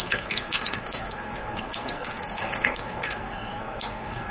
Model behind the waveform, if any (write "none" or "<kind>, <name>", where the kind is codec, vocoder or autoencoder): codec, SNAC